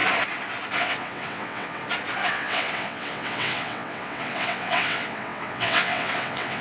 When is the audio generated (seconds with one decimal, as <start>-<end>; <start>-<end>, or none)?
0.8-1.8; 2.3-6.6

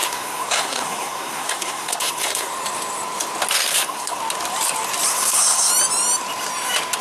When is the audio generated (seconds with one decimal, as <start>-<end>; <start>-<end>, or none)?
0.0-2.5; 3.7-4.2; 5.1-5.7

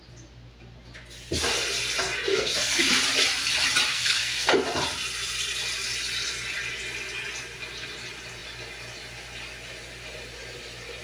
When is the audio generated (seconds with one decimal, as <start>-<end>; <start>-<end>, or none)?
2.3-2.9; 3.9-4.5

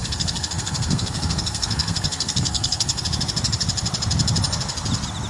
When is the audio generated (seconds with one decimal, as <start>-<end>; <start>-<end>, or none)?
0.0-3.0